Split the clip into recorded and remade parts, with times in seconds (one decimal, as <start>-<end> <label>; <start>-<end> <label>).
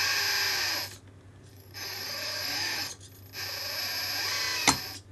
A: 0.0-1.5 recorded; 1.5-2.9 remade; 2.9-5.1 recorded